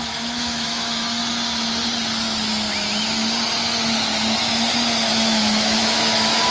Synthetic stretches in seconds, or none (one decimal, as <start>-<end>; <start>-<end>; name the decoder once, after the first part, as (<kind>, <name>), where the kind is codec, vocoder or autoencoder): 0.0-1.2 (autoencoder, DAC-VAE); 5.1-6.5